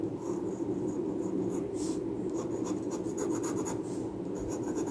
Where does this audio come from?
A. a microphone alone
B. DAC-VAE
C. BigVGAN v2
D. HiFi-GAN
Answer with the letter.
A